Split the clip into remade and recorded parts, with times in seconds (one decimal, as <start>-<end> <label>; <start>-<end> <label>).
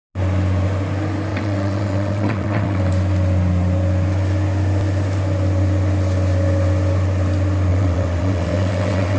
0.0-1.3 recorded; 1.3-2.8 remade; 2.8-7.7 recorded; 7.7-9.2 remade